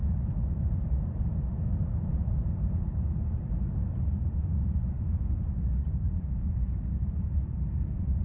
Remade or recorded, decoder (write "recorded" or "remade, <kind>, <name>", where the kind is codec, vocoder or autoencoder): remade, vocoder, BigVGAN v2